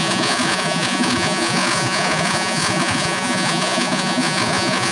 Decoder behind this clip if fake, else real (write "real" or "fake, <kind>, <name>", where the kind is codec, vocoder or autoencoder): fake, vocoder, Vocos